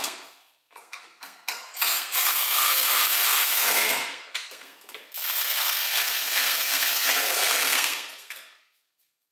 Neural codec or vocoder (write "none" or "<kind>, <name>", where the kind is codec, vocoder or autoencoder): codec, SNAC